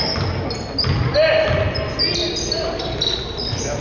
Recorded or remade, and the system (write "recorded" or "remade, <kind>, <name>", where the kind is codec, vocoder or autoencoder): recorded